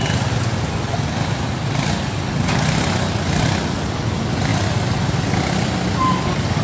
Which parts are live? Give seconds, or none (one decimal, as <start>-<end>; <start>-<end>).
0.0-6.6